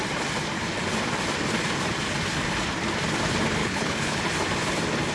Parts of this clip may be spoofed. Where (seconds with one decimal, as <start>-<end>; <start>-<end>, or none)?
3.6-4.2